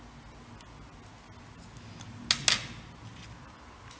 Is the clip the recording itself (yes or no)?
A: yes